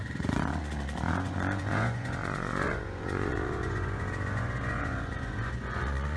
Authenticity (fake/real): fake